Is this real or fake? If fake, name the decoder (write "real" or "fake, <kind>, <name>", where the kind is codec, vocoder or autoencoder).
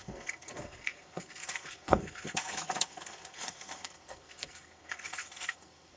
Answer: fake, codec, SNAC